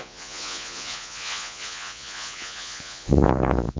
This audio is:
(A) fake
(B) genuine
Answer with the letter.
A